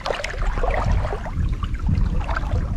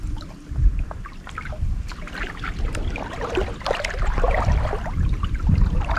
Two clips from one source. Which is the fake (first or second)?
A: second